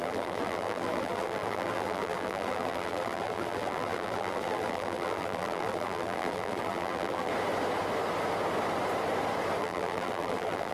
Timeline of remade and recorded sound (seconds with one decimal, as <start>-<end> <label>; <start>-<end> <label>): 0.0-7.3 remade; 7.3-9.6 recorded; 9.6-10.7 remade